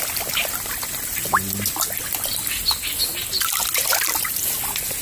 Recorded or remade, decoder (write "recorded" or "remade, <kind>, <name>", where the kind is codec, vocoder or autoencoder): recorded